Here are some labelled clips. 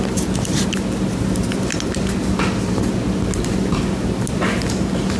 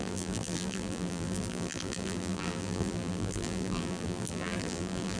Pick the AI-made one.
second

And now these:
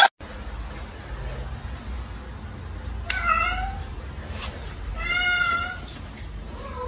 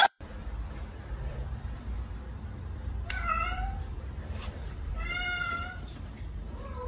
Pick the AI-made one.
second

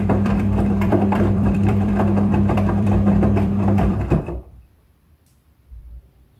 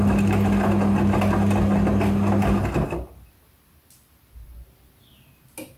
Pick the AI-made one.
first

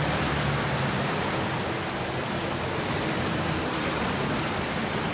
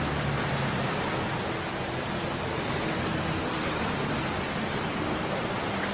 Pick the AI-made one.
first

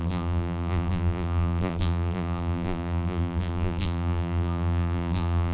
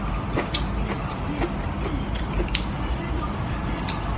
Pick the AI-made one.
first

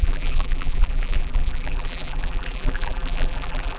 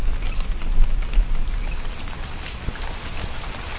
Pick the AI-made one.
first